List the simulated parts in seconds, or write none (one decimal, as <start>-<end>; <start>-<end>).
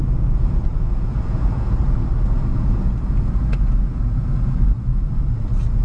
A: 0.0-1.8; 2.5-5.1